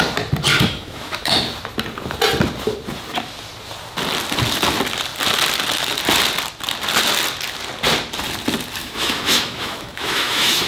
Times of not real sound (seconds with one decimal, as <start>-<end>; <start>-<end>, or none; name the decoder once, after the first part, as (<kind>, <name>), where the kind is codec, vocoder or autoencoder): 0.5-1.3 (autoencoder, DAC-VAE); 8.8-10.7